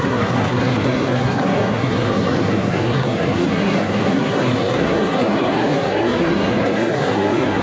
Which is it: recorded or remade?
remade